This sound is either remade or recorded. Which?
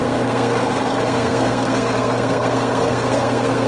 remade